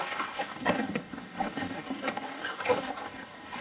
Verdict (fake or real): fake